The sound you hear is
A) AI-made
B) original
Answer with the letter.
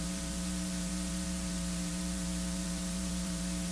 A